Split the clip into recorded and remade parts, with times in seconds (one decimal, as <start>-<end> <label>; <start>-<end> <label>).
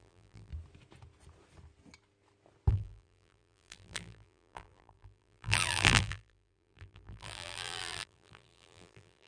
0.0-0.5 remade; 0.5-2.7 recorded; 2.7-9.3 remade